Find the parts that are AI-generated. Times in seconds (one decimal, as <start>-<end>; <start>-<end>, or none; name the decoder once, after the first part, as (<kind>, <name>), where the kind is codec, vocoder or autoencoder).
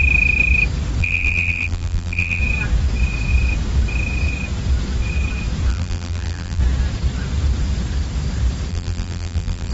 1.0-2.4 (vocoder, BigVGAN v2); 5.7-6.6; 8.7-9.7